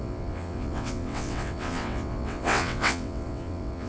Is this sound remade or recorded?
remade